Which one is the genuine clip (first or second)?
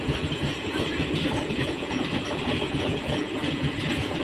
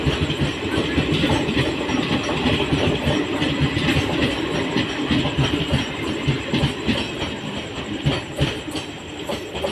second